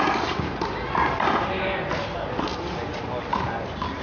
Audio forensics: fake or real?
real